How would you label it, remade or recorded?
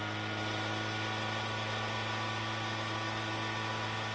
recorded